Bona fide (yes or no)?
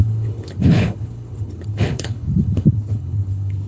no